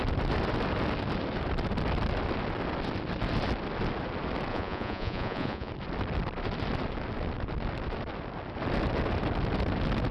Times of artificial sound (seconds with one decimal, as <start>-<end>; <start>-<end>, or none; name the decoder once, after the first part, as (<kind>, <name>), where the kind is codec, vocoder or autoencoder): 4.5-5.7 (vocoder, Vocos)